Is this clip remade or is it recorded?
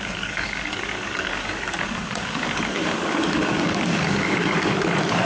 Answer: remade